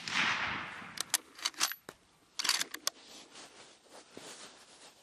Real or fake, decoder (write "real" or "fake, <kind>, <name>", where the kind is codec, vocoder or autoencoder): real